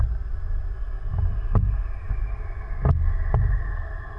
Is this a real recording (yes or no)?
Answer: yes